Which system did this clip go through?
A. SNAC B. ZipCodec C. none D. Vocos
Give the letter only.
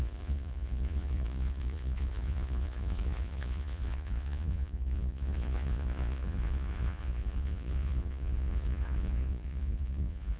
D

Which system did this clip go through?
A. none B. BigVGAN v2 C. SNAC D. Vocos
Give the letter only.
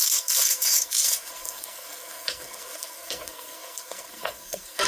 C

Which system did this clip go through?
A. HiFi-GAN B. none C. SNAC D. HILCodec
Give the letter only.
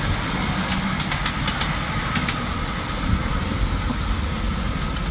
B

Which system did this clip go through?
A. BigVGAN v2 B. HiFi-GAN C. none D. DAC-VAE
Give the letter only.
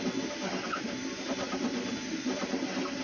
C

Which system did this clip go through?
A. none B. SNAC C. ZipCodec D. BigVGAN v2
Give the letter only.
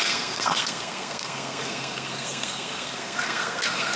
B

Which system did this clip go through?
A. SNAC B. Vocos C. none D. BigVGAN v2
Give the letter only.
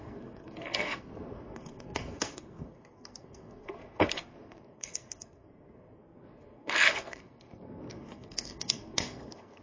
A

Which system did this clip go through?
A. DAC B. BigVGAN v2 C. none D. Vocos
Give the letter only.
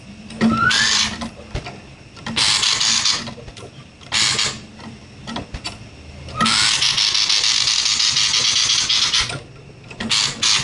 C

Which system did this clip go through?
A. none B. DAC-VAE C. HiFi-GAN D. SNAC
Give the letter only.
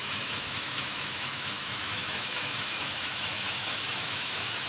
B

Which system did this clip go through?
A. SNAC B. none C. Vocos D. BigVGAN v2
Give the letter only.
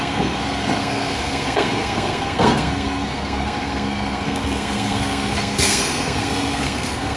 A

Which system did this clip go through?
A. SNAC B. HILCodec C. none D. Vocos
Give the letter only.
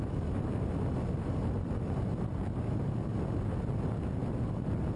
C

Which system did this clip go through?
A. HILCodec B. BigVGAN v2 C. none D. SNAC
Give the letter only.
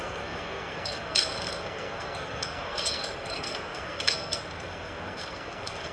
D